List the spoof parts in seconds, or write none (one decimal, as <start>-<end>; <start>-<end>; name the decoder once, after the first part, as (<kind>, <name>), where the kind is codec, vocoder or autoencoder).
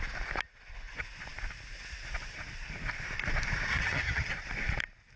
3.7-4.3 (vocoder, HiFi-GAN)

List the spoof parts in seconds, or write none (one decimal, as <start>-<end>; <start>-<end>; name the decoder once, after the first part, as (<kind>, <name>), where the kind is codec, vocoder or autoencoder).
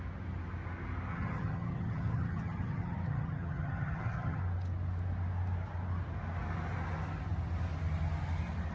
1.1-4.4 (vocoder, HiFi-GAN)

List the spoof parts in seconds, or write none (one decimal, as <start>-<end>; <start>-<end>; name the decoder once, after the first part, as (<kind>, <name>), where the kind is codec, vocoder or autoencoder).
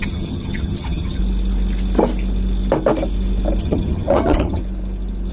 0.0-1.2 (vocoder, HiFi-GAN); 3.6-4.6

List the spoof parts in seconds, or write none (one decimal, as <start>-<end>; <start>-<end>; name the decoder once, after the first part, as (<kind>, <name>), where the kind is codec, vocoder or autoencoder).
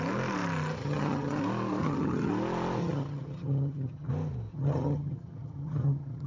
0.8-1.4 (vocoder, HiFi-GAN); 1.8-2.3; 2.8-4.1; 4.5-6.3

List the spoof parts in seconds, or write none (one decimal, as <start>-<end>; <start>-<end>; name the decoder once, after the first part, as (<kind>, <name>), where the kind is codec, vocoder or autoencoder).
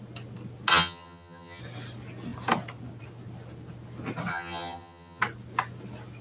0.7-1.6 (vocoder, HiFi-GAN); 4.3-5.2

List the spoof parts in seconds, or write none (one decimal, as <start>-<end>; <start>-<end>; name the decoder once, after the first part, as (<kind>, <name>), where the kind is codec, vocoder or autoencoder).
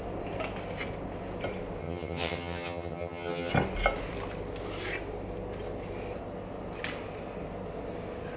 1.8-3.5 (vocoder, HiFi-GAN)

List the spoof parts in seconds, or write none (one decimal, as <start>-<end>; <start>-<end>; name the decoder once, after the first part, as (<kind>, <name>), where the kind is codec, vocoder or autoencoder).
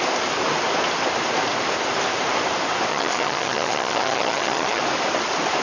2.9-4.8 (vocoder, HiFi-GAN)